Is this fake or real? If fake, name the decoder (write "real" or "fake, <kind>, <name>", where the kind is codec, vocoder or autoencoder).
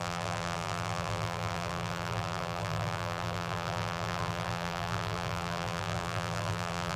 fake, vocoder, BigVGAN v2